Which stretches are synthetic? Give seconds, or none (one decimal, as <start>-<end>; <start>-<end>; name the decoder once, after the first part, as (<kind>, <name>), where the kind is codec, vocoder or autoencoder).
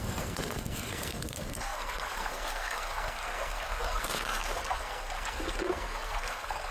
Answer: 0.0-6.7 (codec, SNAC)